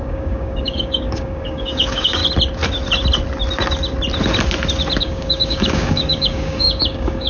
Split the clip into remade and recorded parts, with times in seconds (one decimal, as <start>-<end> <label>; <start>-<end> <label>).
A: 0.0-2.2 remade; 2.2-5.0 recorded; 5.0-7.3 remade